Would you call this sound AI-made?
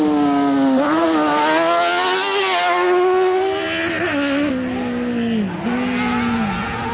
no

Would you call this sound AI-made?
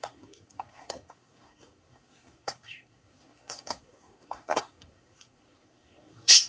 yes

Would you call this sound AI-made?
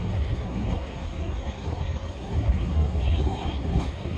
yes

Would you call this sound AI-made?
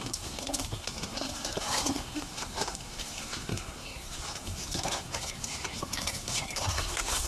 yes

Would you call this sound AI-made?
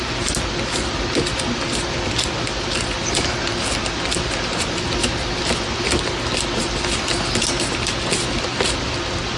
no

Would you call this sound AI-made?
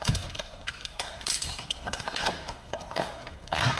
yes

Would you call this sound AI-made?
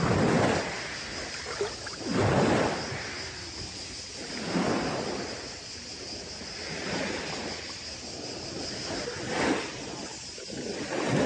no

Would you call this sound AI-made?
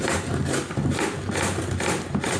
no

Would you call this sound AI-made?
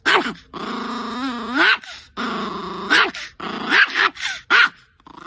no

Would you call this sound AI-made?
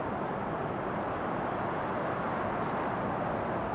no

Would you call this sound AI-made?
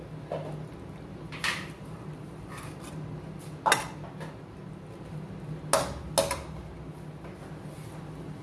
no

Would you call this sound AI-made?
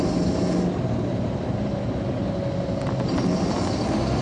no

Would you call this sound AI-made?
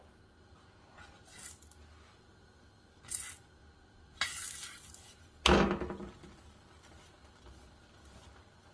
no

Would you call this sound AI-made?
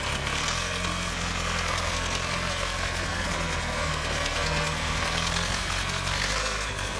yes